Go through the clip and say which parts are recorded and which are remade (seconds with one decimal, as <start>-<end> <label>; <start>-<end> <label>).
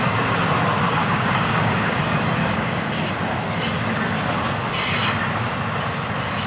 0.0-1.0 recorded; 1.0-2.0 remade; 2.0-2.4 recorded; 2.4-3.1 remade; 3.1-6.5 recorded